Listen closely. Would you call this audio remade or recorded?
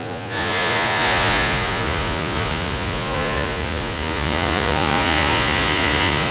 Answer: remade